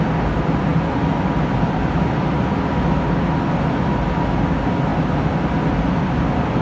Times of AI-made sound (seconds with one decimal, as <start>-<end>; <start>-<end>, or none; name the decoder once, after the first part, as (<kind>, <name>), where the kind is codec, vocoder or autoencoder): none